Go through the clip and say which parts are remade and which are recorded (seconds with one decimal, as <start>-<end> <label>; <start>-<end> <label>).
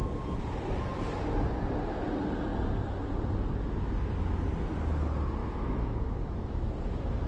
0.0-5.4 recorded; 5.4-6.7 remade; 6.7-7.3 recorded